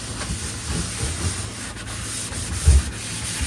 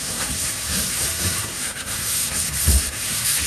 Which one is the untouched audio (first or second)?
first